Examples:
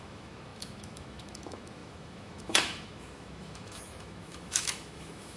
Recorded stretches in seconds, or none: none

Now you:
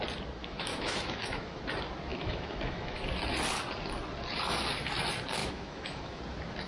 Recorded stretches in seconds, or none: 0.0-0.4; 1.6-2.1; 3.0-5.4; 6.2-6.7